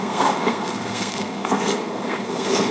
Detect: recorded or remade remade